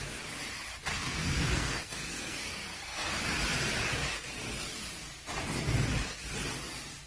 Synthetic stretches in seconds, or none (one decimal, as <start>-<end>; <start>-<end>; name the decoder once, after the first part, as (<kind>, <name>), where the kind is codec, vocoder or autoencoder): 0.9-3.1 (codec, SNAC)